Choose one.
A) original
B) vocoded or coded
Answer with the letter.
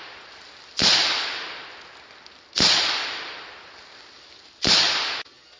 A